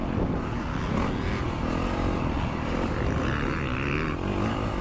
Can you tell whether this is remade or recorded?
recorded